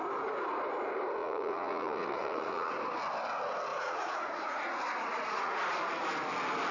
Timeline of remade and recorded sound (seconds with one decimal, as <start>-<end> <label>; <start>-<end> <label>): 0.0-1.2 recorded; 1.2-2.7 remade; 2.7-3.7 recorded; 3.7-4.6 remade; 4.6-5.1 recorded; 5.1-5.6 remade; 5.6-6.7 recorded